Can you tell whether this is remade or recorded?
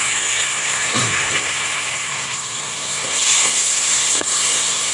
remade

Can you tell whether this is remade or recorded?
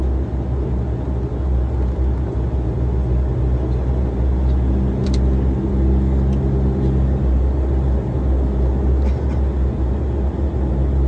recorded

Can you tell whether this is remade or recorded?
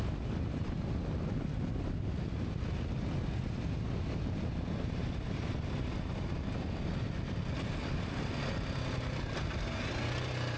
recorded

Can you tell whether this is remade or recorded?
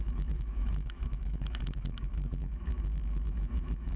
remade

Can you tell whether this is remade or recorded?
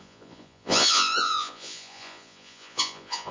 remade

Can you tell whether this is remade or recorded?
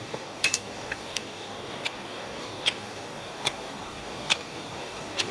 remade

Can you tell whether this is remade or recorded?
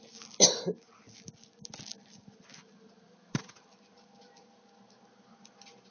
recorded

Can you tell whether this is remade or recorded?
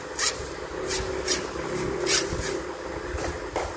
recorded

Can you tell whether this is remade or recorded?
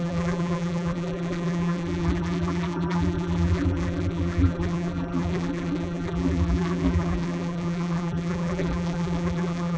remade